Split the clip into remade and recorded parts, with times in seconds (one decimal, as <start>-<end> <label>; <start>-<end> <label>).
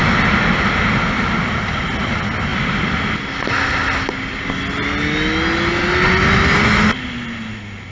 0.0-7.9 recorded